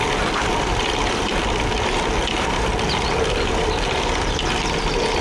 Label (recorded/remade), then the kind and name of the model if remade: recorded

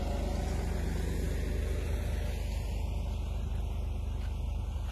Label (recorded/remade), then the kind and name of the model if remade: recorded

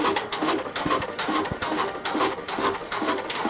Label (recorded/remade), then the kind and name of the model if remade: remade, autoencoder, DAC-VAE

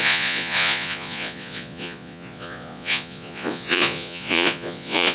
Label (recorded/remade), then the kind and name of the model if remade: remade, vocoder, Vocos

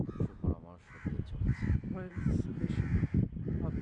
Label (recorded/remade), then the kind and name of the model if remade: recorded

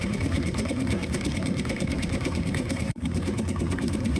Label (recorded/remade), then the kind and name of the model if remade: remade, codec, SNAC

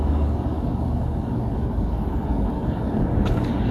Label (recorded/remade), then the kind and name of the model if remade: remade, codec, DAC